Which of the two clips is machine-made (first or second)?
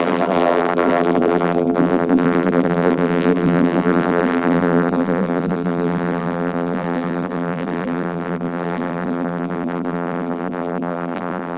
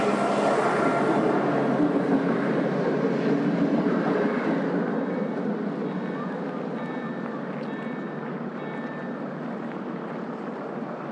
first